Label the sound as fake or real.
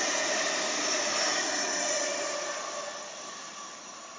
real